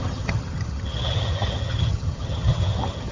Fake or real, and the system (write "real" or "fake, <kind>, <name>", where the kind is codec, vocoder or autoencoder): fake, vocoder, HiFi-GAN